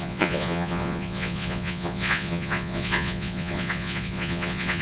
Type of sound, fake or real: fake